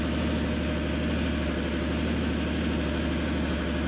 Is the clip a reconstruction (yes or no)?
no